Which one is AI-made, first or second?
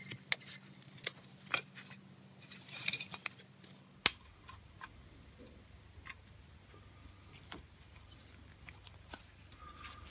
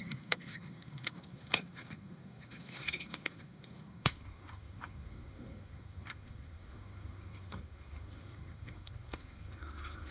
second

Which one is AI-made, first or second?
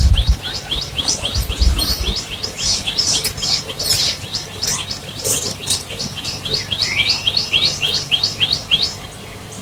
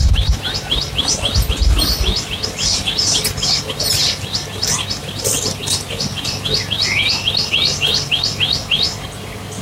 first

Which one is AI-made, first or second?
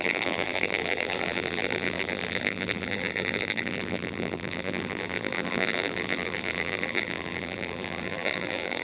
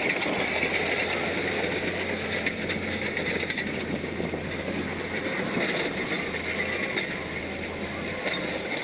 first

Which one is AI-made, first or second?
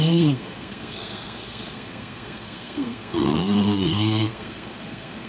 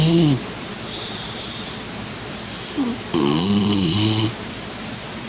first